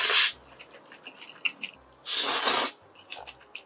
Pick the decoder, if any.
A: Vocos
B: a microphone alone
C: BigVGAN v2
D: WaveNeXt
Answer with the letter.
B